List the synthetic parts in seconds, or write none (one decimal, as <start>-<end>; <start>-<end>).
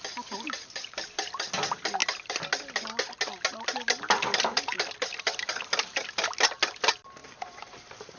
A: 7.2-8.2